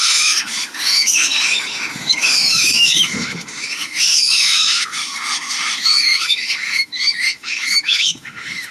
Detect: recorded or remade remade